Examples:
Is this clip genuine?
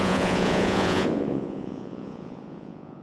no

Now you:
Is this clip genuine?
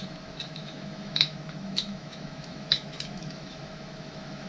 no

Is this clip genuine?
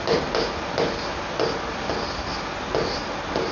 yes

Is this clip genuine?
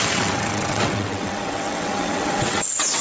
no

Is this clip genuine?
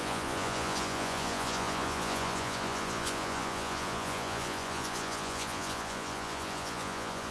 no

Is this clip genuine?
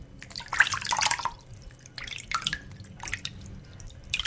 yes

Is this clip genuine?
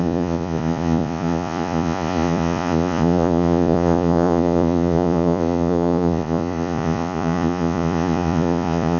no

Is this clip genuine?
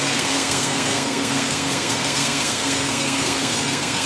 no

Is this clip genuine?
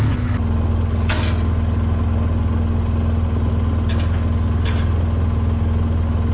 yes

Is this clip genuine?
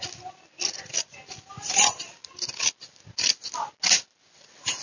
yes